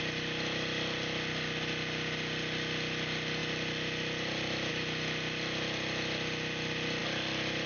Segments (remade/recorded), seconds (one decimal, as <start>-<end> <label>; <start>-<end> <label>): 0.0-7.7 recorded